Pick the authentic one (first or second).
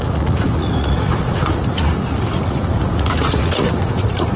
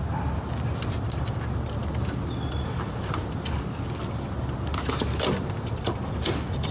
second